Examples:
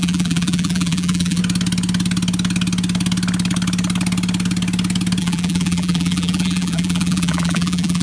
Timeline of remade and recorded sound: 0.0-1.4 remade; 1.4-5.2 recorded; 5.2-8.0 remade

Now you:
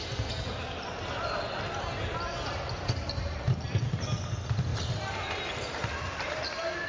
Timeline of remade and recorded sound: 0.0-4.7 recorded; 4.7-6.4 remade; 6.4-6.9 recorded

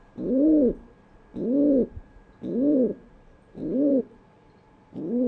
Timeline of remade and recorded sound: 0.0-1.3 remade; 1.3-1.9 recorded; 1.9-5.3 remade

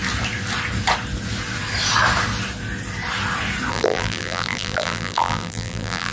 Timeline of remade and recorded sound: 0.0-3.7 recorded; 3.7-6.1 remade